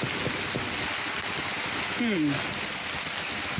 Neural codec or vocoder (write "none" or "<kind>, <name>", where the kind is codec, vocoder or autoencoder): none